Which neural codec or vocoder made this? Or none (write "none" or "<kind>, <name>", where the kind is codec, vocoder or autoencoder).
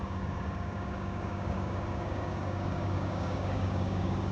codec, DAC